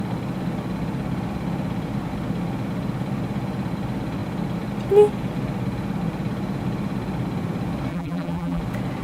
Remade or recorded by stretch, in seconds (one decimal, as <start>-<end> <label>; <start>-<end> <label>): 0.0-7.9 recorded; 7.9-8.6 remade; 8.6-9.0 recorded